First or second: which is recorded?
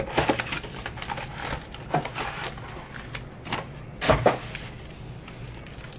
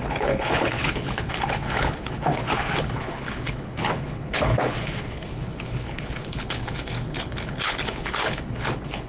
first